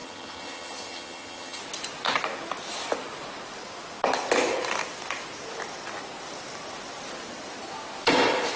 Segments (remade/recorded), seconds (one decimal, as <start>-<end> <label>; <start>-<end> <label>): 0.0-1.6 remade; 1.6-8.6 recorded